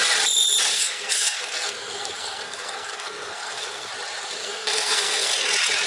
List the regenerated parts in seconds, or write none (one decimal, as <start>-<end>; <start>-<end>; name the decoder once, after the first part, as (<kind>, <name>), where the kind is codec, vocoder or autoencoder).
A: 0.7-3.9 (codec, SNAC); 4.4-5.3